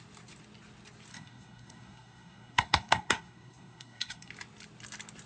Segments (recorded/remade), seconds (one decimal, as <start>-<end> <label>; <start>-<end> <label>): 0.0-1.1 recorded; 1.1-4.3 remade; 4.3-5.3 recorded